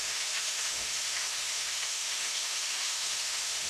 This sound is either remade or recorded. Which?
remade